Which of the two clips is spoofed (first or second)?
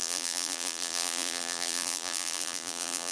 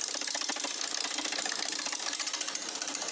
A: first